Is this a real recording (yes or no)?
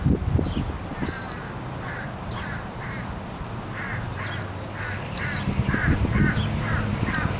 yes